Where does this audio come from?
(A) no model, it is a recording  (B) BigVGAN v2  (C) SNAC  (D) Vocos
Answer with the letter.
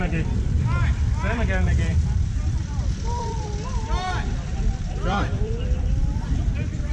B